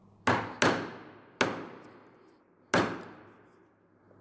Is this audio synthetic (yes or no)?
no